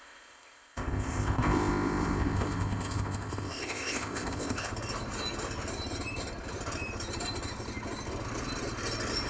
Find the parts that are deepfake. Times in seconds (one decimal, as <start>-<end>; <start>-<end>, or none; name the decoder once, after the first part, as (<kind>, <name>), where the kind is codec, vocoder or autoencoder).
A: 0.0-4.7 (codec, ZipCodec)

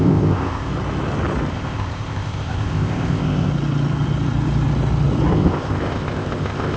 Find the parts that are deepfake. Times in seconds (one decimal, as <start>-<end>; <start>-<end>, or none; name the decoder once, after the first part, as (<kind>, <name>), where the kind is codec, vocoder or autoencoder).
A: 0.0-0.7 (codec, ZipCodec); 1.5-3.5; 5.3-6.8